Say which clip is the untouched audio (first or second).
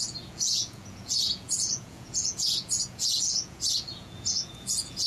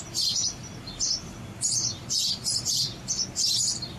second